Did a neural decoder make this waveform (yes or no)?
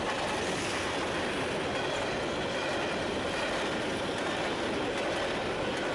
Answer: no